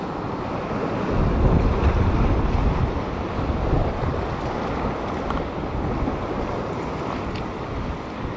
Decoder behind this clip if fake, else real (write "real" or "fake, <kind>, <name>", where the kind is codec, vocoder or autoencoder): real